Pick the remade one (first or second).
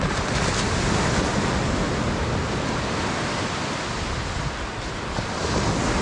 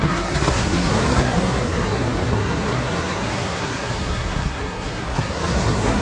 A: second